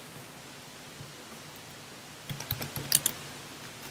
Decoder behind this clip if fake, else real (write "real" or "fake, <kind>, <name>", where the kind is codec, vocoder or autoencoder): real